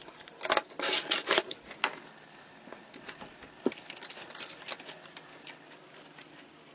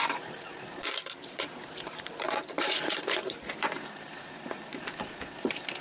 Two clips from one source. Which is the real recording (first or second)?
first